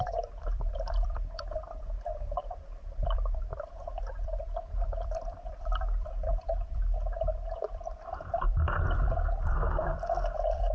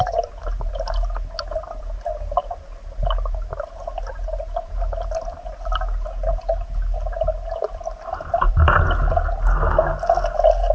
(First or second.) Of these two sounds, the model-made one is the first